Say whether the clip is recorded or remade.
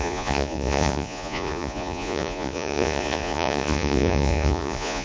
remade